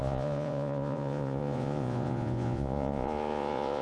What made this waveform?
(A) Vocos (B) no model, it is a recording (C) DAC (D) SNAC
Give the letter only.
A